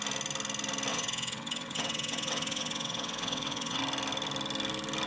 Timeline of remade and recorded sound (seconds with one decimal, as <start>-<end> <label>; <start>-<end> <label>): 0.0-0.9 recorded; 0.9-3.8 remade; 3.8-5.1 recorded